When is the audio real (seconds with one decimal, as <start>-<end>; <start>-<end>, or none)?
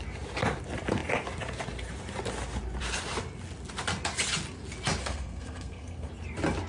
0.0-5.0; 6.1-6.7